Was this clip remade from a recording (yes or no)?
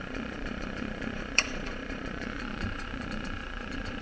yes